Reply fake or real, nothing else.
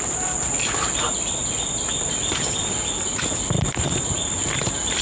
real